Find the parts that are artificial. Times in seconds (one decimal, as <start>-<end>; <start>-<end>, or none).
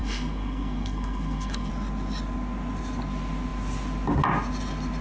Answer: 0.0-1.7